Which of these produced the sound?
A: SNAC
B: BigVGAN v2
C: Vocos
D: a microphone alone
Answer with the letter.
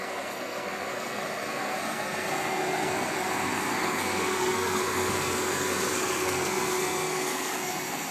A